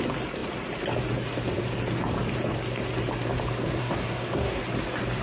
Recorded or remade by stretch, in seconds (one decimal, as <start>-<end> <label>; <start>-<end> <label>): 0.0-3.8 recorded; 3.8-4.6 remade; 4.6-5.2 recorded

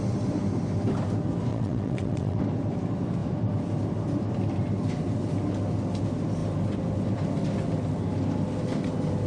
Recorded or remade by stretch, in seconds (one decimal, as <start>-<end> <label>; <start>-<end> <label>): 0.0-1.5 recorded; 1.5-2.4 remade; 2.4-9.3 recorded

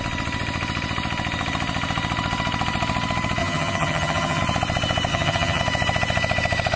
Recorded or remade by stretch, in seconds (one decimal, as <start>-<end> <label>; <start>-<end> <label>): 0.0-3.4 recorded; 3.4-4.4 remade; 4.4-5.1 recorded; 5.1-5.6 remade; 5.6-6.8 recorded